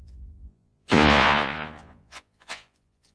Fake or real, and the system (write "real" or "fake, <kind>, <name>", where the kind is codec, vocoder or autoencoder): fake, vocoder, Vocos